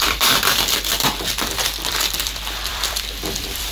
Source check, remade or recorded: remade